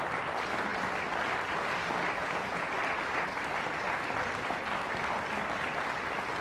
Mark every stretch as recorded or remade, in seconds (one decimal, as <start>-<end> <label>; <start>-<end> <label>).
0.0-2.2 recorded; 2.2-2.7 remade; 2.7-6.4 recorded